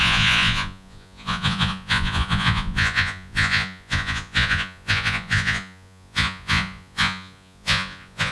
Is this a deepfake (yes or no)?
yes